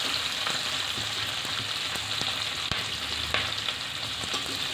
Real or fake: real